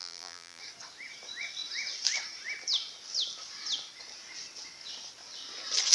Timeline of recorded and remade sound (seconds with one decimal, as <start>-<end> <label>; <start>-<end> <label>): 0.0-0.6 remade; 0.6-5.9 recorded